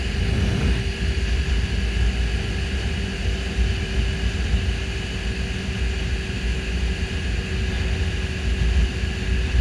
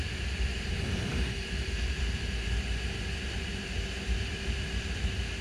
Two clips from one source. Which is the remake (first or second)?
second